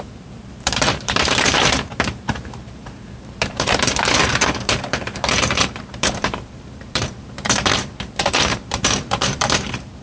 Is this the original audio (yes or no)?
no